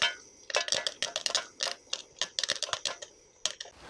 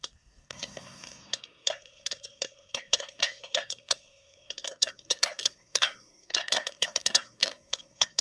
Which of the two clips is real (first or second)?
first